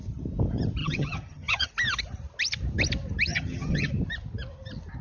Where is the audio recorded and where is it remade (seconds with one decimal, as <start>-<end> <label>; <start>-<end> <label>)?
0.0-0.8 recorded; 0.8-1.7 remade; 1.7-3.3 recorded; 3.3-3.9 remade; 3.9-5.0 recorded